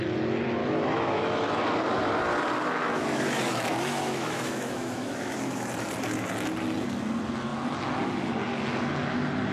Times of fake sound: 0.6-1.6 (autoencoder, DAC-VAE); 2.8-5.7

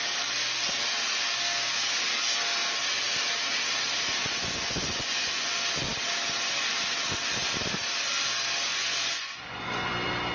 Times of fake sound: 4.2-5.5 (vocoder, Vocos); 8.7-9.9

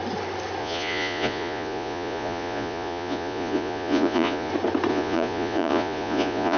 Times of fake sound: 0.6-4.5 (vocoder, Vocos); 4.9-6.6

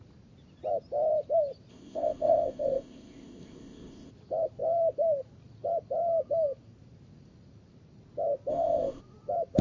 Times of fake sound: 1.7-4.1 (codec, ZipCodec); 8.5-9.0